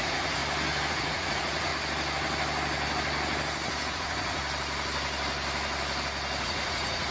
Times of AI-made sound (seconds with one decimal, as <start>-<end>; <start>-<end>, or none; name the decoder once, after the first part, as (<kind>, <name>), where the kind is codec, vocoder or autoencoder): 0.0-0.4 (vocoder, Vocos); 0.9-1.7; 3.9-4.4; 6.4-7.1